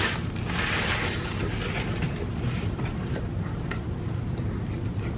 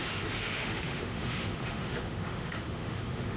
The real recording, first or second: first